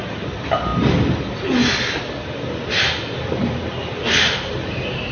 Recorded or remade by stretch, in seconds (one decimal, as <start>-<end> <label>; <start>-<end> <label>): 0.0-5.1 recorded